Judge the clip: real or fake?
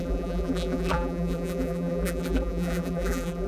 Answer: fake